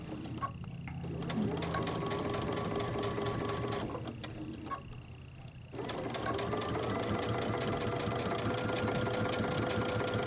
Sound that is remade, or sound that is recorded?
recorded